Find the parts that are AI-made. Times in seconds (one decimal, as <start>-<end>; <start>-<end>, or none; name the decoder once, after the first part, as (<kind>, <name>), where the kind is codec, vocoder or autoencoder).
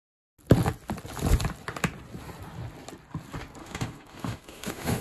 3.6-5.0 (autoencoder, DAC-VAE)